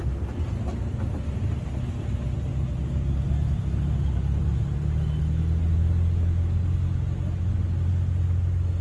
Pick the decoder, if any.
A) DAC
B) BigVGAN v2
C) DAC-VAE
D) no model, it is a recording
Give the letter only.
D